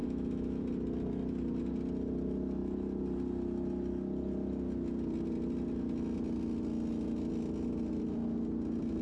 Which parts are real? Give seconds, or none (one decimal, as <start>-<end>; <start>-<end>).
0.6-9.0